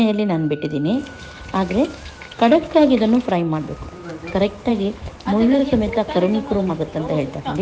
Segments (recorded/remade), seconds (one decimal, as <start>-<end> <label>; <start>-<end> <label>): 0.0-7.6 remade